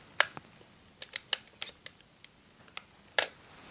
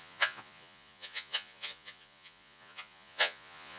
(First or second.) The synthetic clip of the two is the second